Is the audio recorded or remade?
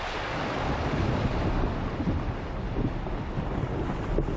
recorded